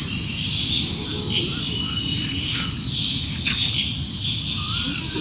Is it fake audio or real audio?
real